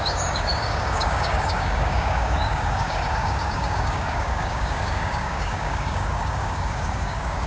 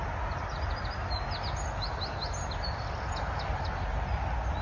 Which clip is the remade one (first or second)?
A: first